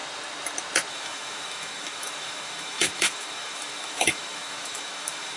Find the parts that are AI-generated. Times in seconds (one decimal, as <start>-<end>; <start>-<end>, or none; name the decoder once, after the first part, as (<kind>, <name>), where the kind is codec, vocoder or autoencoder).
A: 0.9-5.4 (autoencoder, DAC-VAE)